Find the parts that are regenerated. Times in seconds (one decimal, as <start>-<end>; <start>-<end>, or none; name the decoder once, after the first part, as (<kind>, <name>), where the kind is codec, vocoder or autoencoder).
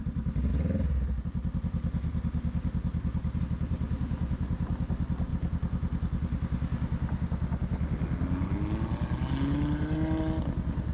none